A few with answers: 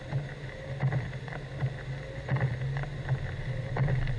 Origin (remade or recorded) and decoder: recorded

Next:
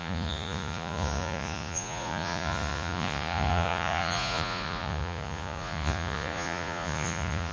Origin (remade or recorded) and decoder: remade, vocoder, Vocos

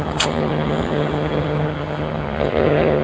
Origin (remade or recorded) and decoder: remade, vocoder, HiFi-GAN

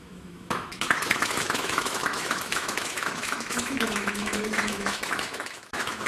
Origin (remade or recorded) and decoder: remade, autoencoder, DAC-VAE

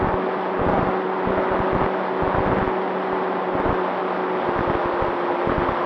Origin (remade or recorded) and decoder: recorded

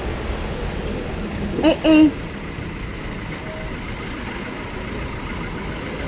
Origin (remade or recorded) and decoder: recorded